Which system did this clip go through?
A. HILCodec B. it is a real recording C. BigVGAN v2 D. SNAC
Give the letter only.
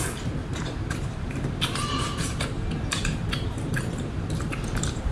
C